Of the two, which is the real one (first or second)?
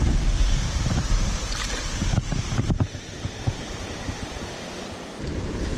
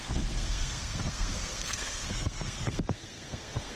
first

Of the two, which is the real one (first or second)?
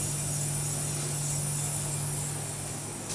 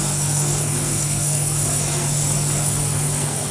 first